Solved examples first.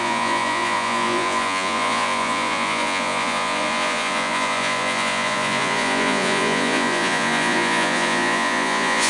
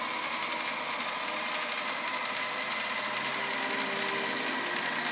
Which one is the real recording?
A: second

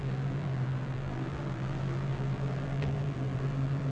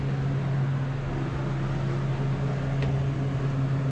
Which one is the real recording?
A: second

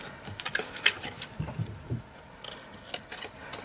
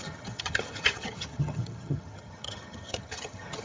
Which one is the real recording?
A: first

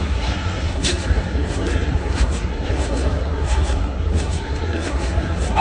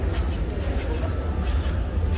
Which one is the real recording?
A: second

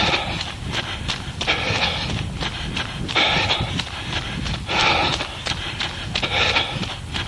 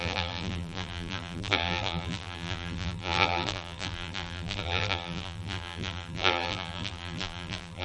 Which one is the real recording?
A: first